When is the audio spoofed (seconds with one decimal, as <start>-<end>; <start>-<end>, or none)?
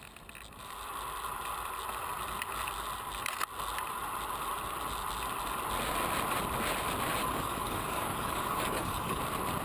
7.2-9.2